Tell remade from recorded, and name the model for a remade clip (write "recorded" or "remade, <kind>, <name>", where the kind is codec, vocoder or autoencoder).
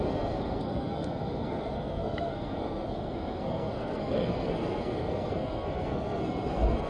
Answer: remade, codec, SNAC